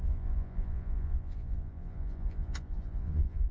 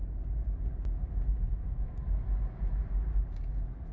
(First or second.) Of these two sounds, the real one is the second